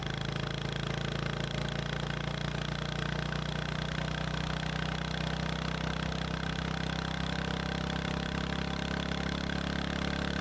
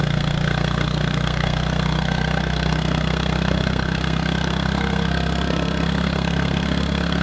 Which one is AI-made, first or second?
second